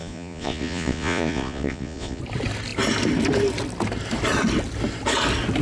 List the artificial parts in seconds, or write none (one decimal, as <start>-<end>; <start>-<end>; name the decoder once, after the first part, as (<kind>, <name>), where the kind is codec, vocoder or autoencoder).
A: 0.0-2.2 (vocoder, Vocos)

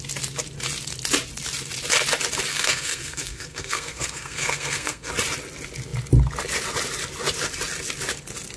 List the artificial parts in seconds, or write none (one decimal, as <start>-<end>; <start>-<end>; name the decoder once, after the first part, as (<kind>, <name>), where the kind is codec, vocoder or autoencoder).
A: 2.5-5.1 (codec, SNAC)

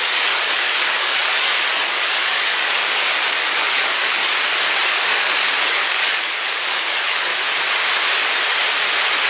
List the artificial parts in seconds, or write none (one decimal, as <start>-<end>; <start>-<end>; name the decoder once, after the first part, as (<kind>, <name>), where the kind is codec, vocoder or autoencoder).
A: 0.0-4.2 (codec, DAC); 4.9-7.3

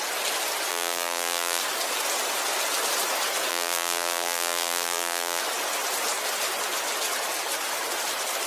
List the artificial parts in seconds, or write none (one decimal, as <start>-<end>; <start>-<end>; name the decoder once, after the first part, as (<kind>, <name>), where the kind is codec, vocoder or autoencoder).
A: 0.7-1.6 (vocoder, BigVGAN v2); 3.5-5.4

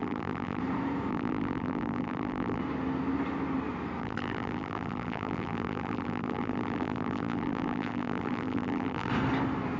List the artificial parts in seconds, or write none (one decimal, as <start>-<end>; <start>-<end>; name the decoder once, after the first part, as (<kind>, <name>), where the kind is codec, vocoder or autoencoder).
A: 0.0-0.6 (vocoder, BigVGAN v2); 1.1-2.6; 4.0-9.1

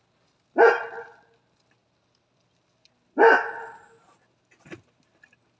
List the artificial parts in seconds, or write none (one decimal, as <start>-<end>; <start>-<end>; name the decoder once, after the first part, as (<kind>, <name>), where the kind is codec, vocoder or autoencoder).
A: none

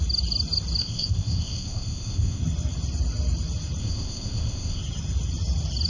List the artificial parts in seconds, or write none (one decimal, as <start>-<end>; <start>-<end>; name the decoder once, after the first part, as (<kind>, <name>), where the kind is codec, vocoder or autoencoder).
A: 0.8-2.4 (codec, ZipCodec); 3.8-4.8

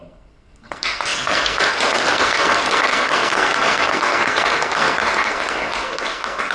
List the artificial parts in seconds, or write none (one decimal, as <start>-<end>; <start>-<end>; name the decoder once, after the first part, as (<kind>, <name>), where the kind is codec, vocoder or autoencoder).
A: 0.0-6.5 (codec, SNAC)